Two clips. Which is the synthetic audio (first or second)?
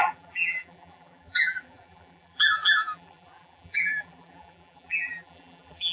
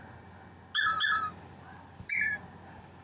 first